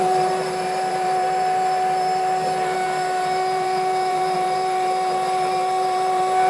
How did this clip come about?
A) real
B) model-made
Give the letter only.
B